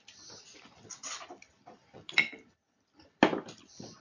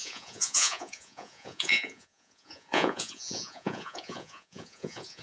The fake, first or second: second